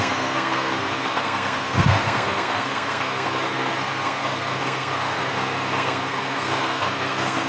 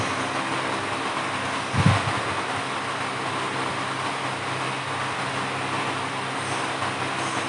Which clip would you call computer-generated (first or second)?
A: first